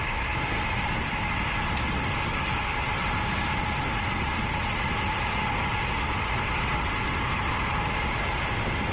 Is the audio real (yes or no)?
yes